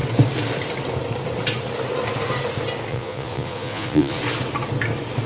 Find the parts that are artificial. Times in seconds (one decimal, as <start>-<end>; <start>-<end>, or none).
2.9-4.2